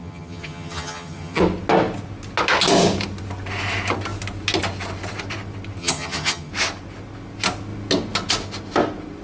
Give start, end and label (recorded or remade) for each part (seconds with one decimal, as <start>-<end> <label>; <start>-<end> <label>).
0.0-1.4 remade; 1.4-5.8 recorded; 5.8-6.5 remade; 6.5-9.2 recorded